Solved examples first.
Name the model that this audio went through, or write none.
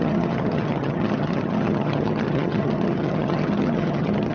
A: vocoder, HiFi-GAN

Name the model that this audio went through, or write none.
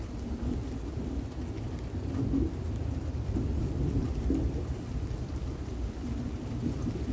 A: none